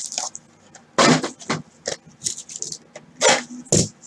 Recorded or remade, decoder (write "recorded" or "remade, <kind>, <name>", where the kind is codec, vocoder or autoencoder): recorded